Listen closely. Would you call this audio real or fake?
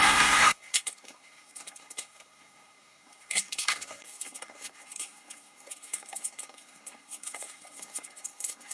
fake